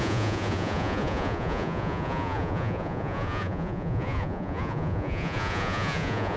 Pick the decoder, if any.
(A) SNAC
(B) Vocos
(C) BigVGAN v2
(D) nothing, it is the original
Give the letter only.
B